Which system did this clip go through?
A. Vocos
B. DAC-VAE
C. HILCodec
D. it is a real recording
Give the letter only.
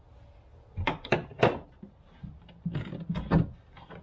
D